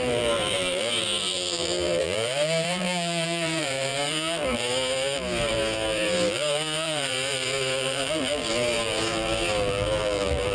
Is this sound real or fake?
fake